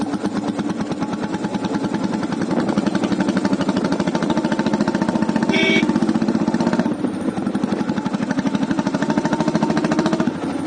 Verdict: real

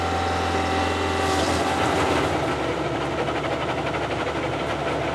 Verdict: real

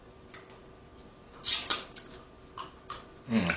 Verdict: real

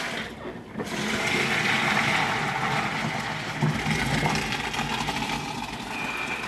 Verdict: real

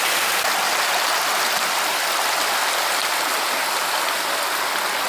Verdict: real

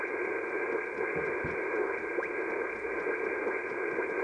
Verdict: real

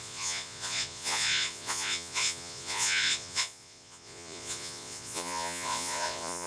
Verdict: fake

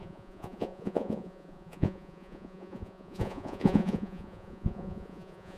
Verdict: fake